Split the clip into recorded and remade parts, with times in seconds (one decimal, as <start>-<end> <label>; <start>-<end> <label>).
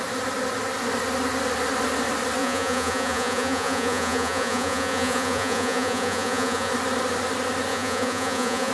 0.0-2.4 recorded; 2.4-6.7 remade; 6.7-7.7 recorded; 7.7-8.7 remade